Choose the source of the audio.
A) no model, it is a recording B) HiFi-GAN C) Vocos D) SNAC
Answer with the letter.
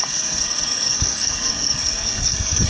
D